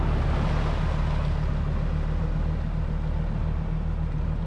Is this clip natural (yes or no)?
yes